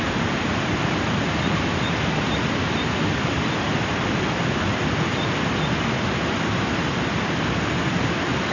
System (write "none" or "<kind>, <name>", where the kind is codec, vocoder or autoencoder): none